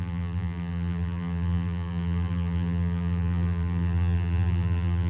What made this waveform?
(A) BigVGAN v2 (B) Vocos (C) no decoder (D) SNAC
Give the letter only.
A